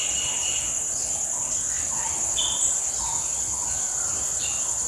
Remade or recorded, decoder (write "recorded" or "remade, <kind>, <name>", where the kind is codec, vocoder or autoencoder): recorded